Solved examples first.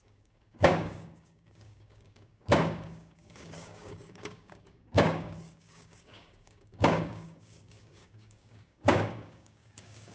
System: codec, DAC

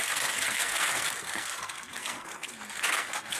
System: codec, SNAC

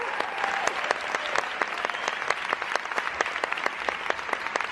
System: none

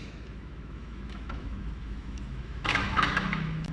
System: autoencoder, DAC-VAE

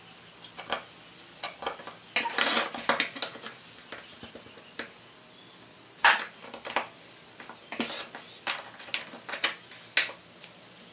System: none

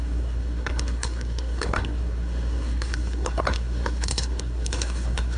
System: codec, SNAC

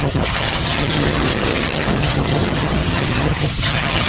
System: vocoder, HiFi-GAN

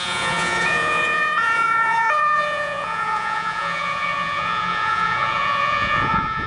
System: vocoder, Vocos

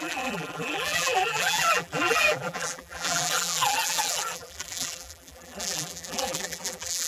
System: vocoder, BigVGAN v2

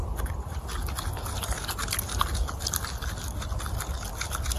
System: none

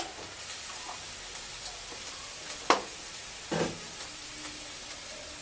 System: none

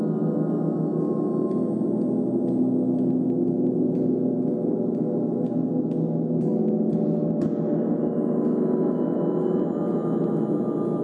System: none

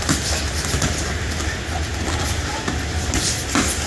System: none